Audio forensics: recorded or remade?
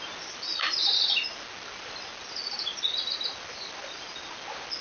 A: recorded